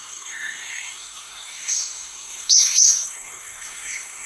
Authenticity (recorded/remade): remade